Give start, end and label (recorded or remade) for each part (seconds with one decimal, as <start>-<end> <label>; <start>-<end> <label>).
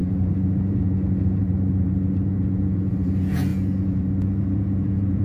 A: 0.0-5.2 remade